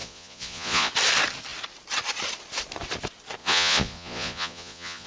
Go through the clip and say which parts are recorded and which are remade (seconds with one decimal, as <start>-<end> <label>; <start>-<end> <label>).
0.0-0.9 remade; 0.9-3.4 recorded; 3.4-5.1 remade